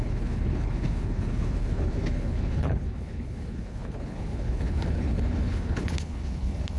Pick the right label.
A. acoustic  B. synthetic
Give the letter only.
B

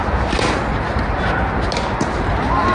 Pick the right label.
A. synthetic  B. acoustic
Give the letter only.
B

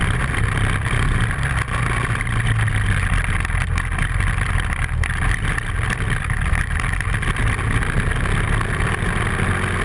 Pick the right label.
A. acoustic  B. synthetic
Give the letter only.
A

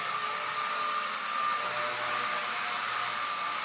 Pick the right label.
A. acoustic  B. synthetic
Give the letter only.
A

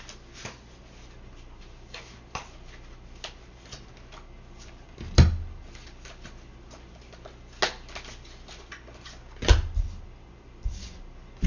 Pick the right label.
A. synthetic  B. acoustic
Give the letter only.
B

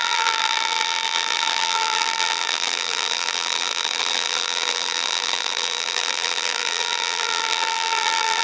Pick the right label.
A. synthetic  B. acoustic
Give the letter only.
A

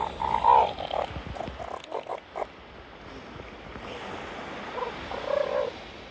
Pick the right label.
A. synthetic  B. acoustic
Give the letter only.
B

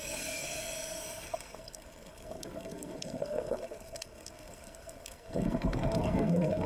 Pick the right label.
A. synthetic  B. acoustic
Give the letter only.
A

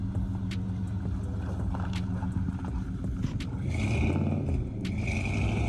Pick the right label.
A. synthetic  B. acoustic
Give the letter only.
B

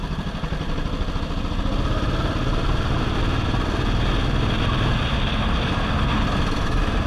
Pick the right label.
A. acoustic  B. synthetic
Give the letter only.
A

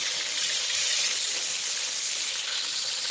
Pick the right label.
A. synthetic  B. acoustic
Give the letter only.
B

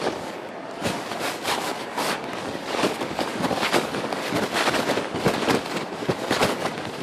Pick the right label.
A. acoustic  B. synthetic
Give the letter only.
B